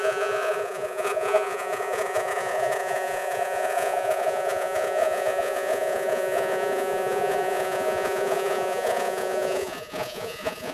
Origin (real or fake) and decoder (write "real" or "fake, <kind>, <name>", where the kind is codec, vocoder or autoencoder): fake, vocoder, Vocos